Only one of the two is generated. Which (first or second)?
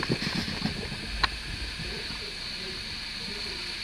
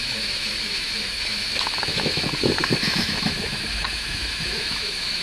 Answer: second